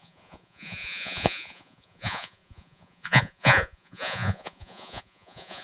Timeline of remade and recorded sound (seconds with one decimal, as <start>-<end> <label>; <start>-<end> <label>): 0.0-5.6 remade